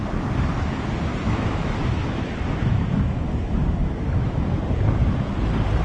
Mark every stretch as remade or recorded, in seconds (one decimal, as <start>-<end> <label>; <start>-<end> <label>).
0.0-1.1 recorded; 1.1-4.6 remade; 4.6-5.8 recorded